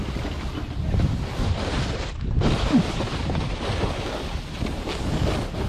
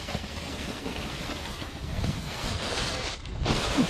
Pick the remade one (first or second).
second